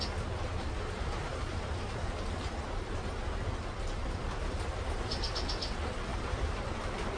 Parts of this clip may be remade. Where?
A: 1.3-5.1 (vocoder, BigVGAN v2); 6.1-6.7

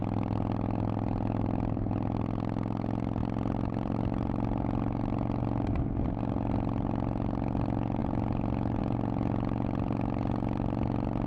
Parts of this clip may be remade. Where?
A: none